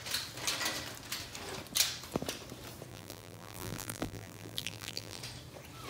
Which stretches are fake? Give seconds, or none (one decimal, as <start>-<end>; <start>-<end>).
2.9-5.2